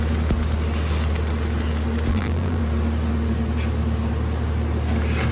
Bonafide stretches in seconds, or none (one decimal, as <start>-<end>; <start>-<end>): 0.0-2.1; 2.6-5.3